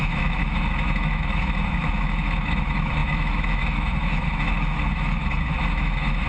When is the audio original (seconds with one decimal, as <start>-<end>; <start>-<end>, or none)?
none